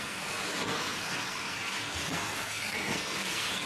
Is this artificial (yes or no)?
yes